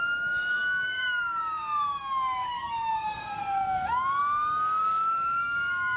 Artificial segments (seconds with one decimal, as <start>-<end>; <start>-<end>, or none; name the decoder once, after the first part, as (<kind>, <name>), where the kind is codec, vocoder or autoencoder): 0.0-6.0 (codec, DAC)